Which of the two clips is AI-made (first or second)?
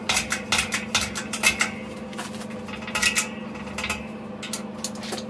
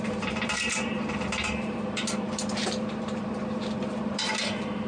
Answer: second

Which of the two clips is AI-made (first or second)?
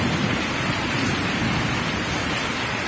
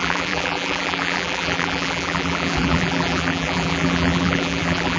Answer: second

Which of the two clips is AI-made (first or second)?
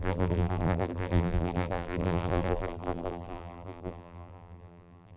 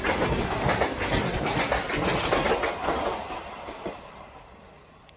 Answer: first